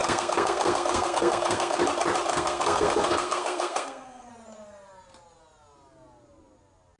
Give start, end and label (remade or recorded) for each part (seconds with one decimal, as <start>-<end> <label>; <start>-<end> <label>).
0.0-1.8 remade; 1.8-2.3 recorded; 2.3-4.3 remade; 4.3-7.0 recorded